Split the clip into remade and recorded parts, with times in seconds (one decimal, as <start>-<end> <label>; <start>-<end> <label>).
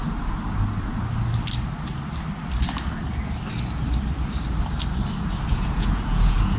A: 0.0-5.5 recorded; 5.5-6.6 remade